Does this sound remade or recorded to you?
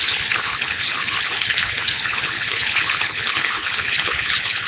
remade